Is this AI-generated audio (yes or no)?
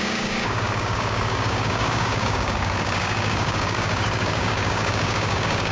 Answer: yes